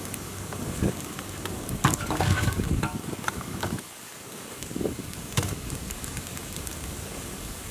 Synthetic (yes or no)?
yes